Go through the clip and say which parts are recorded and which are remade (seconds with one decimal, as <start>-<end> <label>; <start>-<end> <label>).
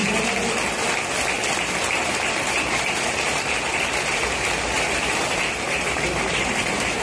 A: 0.0-2.8 recorded; 2.8-7.0 remade